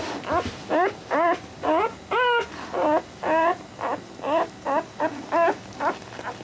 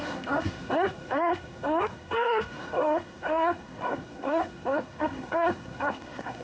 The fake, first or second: second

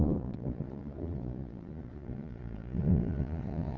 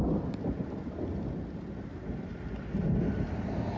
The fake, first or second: first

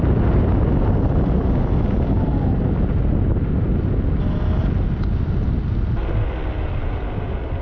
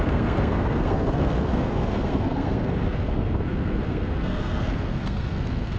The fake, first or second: second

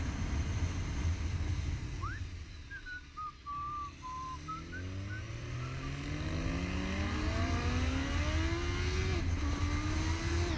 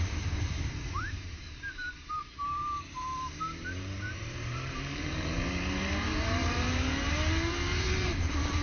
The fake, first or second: second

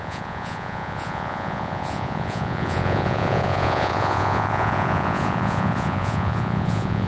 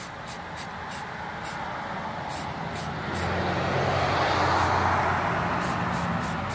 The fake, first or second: first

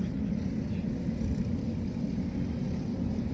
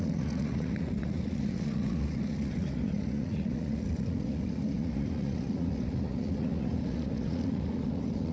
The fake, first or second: second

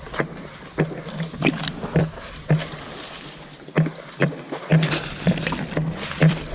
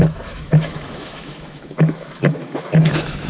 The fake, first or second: second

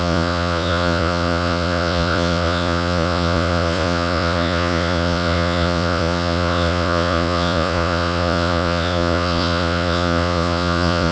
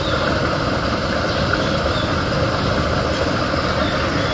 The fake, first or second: first